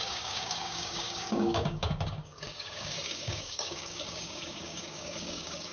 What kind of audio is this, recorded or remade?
remade